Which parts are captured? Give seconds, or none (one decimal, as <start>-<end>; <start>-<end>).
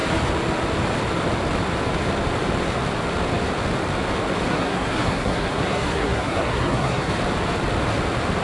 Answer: 0.0-4.5; 7.1-8.4